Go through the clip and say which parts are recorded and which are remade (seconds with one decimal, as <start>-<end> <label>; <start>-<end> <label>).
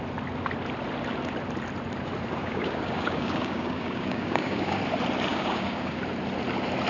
0.0-2.4 recorded; 2.4-4.8 remade; 4.8-5.3 recorded; 5.3-6.0 remade; 6.0-6.9 recorded